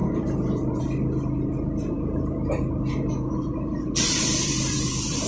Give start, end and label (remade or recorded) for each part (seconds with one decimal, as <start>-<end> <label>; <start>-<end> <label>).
0.0-5.3 remade